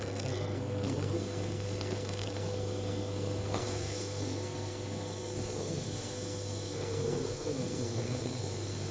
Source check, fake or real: fake